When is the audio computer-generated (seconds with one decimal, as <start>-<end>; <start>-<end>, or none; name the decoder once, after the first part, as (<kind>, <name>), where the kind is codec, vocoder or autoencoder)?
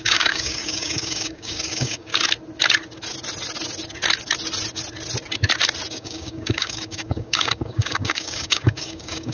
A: 0.0-2.1 (codec, DAC); 5.9-9.3